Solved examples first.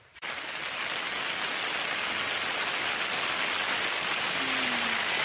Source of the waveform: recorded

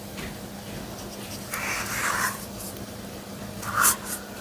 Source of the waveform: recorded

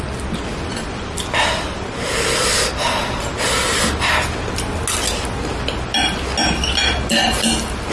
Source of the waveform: recorded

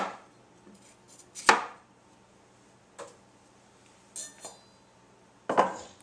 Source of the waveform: recorded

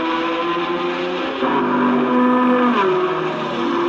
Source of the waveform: recorded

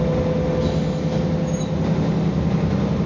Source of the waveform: recorded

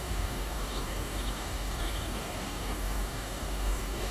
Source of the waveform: remade